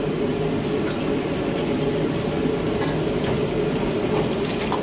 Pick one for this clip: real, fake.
real